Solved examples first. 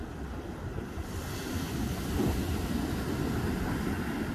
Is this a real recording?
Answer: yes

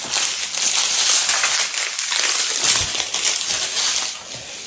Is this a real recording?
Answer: yes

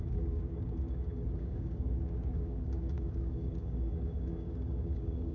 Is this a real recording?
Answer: no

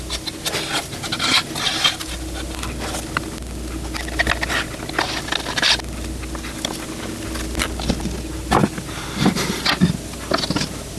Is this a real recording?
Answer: yes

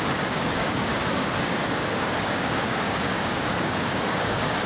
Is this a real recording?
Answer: no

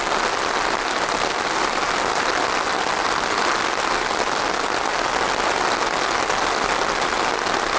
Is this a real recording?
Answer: yes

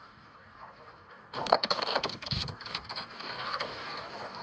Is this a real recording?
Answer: no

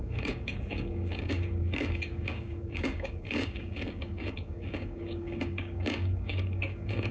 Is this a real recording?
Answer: no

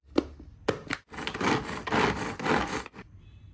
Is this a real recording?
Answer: yes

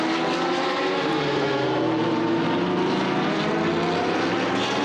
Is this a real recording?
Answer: yes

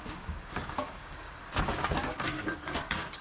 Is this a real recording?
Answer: no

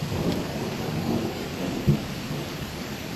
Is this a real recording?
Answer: no